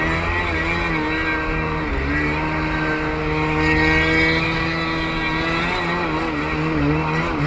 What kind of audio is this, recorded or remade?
recorded